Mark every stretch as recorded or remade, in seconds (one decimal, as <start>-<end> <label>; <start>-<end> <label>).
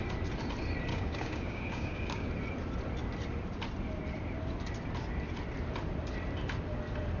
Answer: 0.0-0.9 recorded; 0.9-2.3 remade; 2.3-7.2 recorded